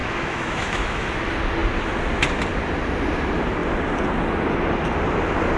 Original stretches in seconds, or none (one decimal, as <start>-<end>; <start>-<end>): 1.1-5.6